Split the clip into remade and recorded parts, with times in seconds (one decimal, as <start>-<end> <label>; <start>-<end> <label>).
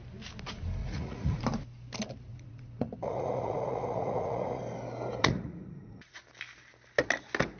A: 0.0-0.8 recorded; 0.8-1.4 remade; 1.4-2.3 recorded; 2.3-4.6 remade; 4.6-5.2 recorded; 5.2-6.2 remade; 6.2-7.6 recorded